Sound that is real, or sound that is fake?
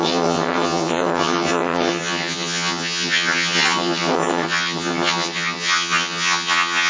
fake